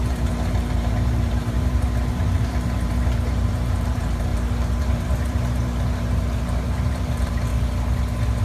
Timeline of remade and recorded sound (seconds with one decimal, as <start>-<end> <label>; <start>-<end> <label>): 0.0-7.5 remade; 7.5-8.4 recorded